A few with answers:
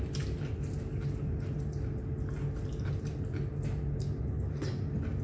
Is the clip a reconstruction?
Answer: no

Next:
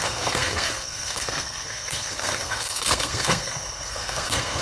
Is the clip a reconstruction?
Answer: yes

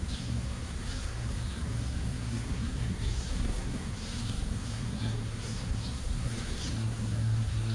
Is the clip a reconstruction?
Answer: yes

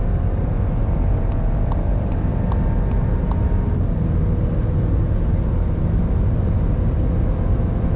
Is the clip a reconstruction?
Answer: no